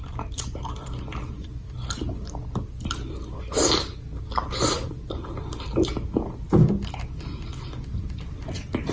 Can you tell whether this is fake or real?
real